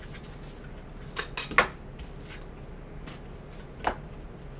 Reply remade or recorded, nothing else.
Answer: recorded